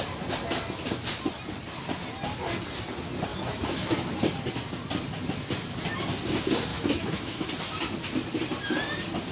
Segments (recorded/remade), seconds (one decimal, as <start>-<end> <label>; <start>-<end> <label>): 0.0-3.3 recorded; 3.3-4.1 remade; 4.1-6.7 recorded; 6.7-7.5 remade; 7.5-9.3 recorded